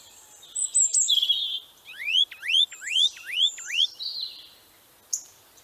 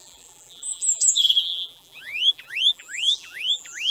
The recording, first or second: first